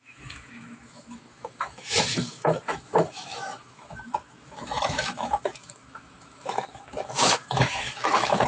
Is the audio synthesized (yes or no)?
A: yes